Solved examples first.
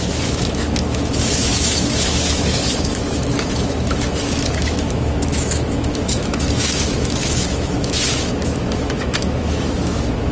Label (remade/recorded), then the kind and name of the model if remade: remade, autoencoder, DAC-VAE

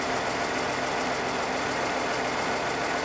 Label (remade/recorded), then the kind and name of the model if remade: recorded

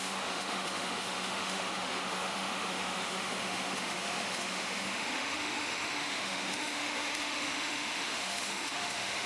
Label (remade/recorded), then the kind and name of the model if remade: remade, autoencoder, DAC-VAE